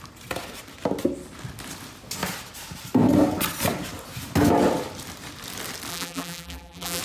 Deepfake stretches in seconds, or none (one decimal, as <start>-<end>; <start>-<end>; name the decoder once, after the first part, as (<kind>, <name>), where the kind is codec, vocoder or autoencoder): 5.9-7.0 (vocoder, BigVGAN v2)